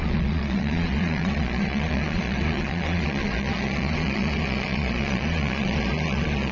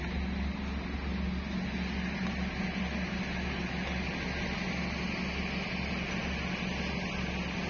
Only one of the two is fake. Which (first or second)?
first